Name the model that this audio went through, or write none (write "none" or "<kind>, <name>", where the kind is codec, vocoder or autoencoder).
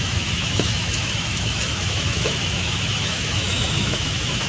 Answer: autoencoder, DAC-VAE